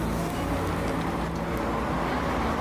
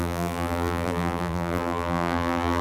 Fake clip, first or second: second